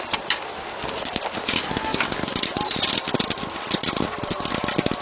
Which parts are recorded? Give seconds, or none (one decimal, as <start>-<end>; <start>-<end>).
0.0-5.0